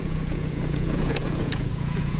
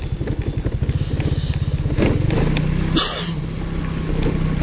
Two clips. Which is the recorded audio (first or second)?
second